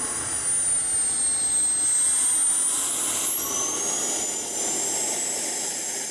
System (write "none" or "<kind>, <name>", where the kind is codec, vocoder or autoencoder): none